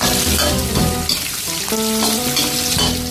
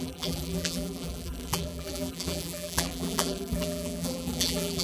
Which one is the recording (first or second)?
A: first